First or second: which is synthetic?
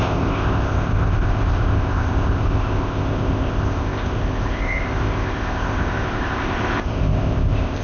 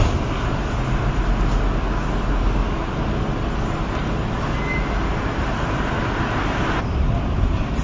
first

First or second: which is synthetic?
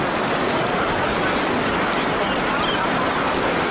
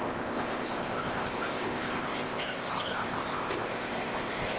second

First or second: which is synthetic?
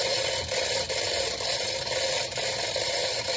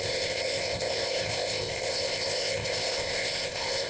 second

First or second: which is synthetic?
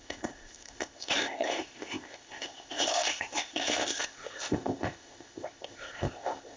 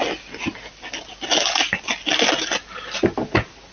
first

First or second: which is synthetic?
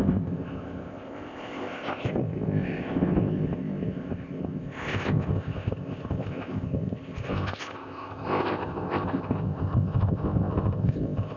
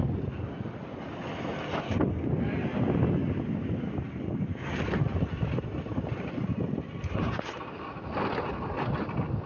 first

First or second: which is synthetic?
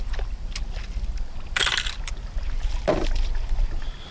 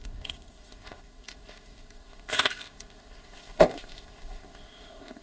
second